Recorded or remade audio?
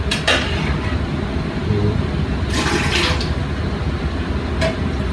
recorded